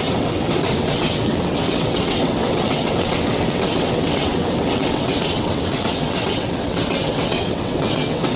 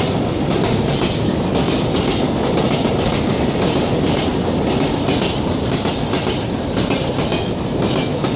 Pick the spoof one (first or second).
first